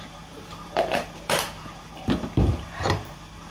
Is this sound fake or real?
fake